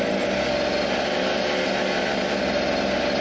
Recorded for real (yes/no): yes